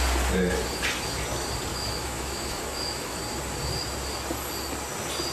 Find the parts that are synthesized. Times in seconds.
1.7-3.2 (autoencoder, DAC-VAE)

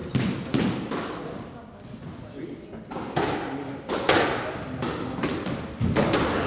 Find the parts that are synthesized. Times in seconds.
none

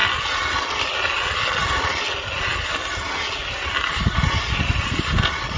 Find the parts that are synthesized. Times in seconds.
none